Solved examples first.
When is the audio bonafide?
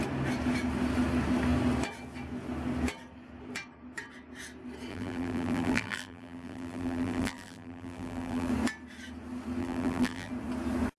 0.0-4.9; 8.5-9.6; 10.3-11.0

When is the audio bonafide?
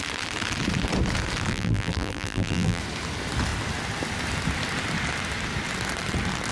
0.0-1.5; 2.8-6.5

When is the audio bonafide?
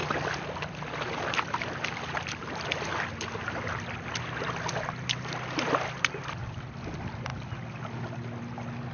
0.0-8.9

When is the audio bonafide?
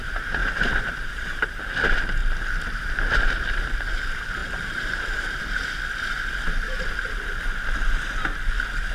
0.0-0.4; 1.6-4.4; 5.4-8.9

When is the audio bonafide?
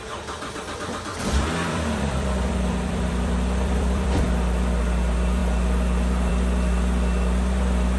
0.0-1.1; 4.2-8.0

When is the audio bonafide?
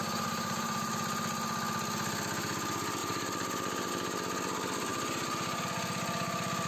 0.9-3.0; 3.9-4.9; 5.6-6.7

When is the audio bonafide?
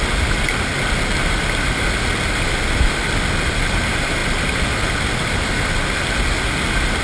0.0-7.0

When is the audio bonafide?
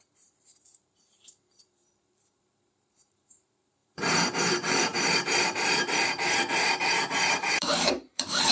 none